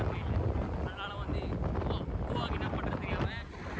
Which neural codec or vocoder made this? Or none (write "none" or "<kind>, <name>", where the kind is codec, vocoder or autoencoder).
none